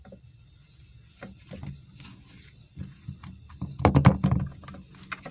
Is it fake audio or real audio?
real